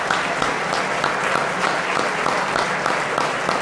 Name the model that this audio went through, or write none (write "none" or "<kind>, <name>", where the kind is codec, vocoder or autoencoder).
none